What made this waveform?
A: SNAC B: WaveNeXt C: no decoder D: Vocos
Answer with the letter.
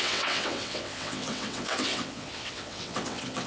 B